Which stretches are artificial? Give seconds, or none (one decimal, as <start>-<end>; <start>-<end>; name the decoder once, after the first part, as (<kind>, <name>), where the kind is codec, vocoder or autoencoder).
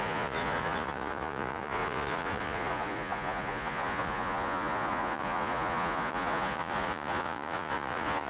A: 0.0-8.3 (vocoder, Vocos)